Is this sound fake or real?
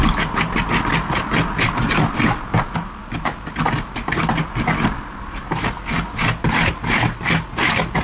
real